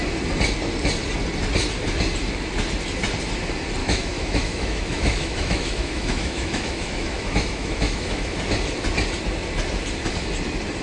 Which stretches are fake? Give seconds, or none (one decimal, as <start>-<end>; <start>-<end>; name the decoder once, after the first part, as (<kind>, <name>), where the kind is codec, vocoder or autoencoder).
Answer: 3.8-8.4 (autoencoder, DAC-VAE)